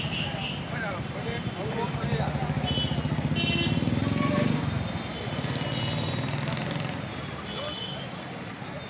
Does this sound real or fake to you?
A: real